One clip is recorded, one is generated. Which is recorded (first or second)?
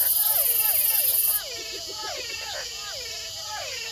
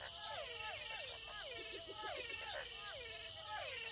second